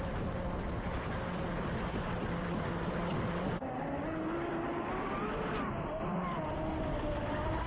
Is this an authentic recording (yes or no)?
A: yes